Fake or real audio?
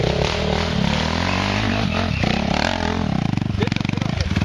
fake